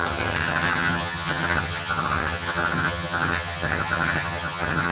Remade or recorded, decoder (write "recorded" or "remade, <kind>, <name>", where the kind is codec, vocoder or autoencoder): remade, vocoder, HiFi-GAN